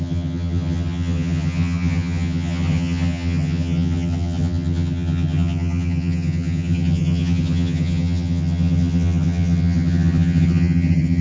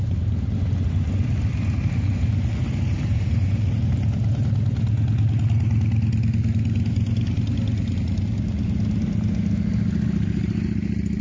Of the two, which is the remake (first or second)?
first